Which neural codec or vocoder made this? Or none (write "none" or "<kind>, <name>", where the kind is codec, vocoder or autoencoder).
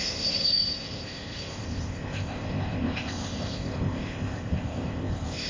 codec, ZipCodec